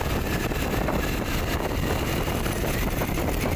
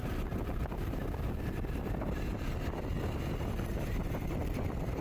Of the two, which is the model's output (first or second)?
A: first